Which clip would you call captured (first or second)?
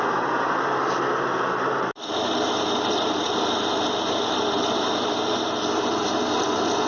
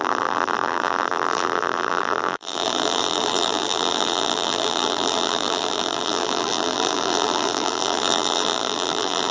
first